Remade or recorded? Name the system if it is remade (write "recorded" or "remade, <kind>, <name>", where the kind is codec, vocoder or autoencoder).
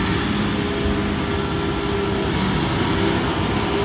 recorded